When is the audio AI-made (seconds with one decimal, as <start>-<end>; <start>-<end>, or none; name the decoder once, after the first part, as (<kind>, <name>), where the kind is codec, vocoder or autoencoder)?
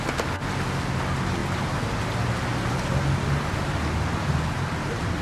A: none